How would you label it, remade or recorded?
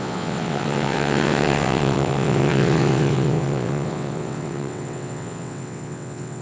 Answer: remade